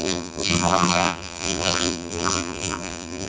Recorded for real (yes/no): no